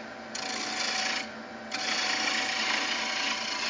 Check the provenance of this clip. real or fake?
real